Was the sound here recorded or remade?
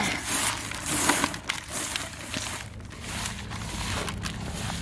recorded